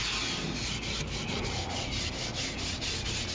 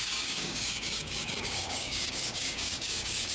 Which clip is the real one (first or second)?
first